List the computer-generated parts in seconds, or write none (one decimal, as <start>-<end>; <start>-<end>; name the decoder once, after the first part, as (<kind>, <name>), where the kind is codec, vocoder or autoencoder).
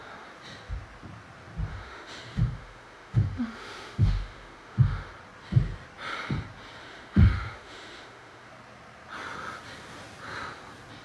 1.7-5.1 (autoencoder, DAC-VAE); 6.8-8.5